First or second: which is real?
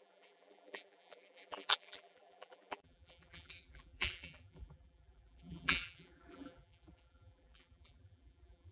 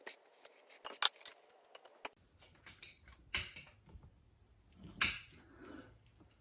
second